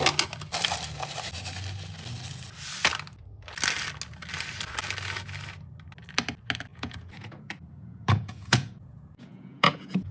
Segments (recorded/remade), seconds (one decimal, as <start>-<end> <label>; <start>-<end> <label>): 0.0-6.7 recorded; 6.7-10.1 remade